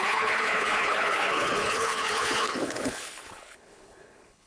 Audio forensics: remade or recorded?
remade